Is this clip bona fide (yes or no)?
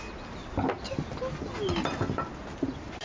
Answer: yes